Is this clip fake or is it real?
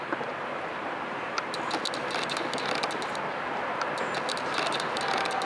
real